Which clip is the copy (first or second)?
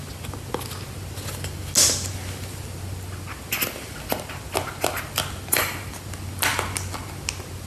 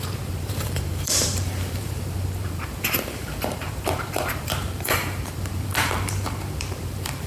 second